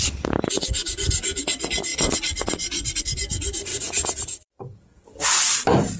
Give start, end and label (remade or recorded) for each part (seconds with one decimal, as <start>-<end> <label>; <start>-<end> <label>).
0.0-0.8 recorded; 0.8-1.4 remade; 1.4-3.7 recorded; 3.7-5.4 remade; 5.4-6.0 recorded